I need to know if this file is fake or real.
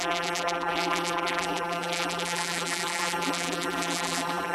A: fake